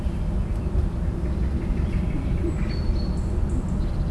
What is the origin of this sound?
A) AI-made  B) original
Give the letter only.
B